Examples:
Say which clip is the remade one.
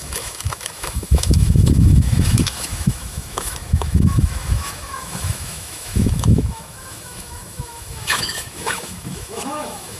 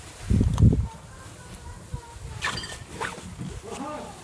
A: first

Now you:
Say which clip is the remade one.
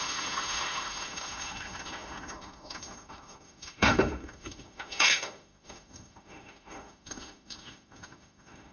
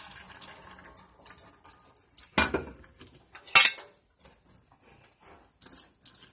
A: first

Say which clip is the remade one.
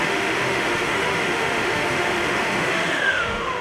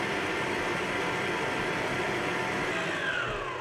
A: first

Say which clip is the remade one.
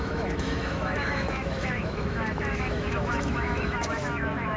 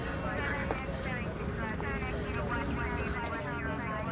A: first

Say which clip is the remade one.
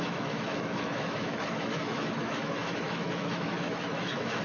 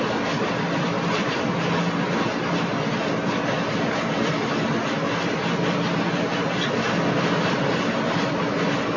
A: first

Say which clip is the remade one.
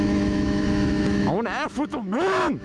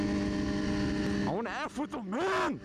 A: first